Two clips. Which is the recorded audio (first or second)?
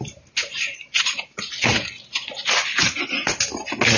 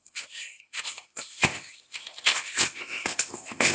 first